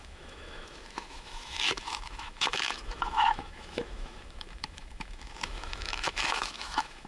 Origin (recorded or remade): remade